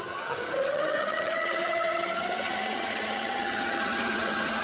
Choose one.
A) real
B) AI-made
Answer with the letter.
B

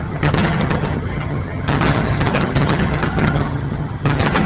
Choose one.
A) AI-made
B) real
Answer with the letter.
A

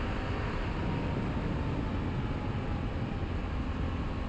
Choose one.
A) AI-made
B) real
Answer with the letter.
B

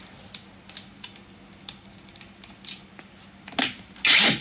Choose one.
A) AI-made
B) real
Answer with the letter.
B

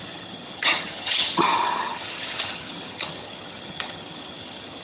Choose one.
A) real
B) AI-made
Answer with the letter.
B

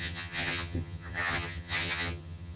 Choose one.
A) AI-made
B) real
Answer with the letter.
A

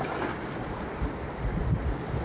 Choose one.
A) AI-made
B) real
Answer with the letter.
B